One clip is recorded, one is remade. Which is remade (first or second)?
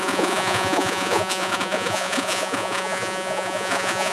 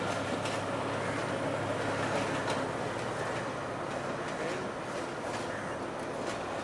first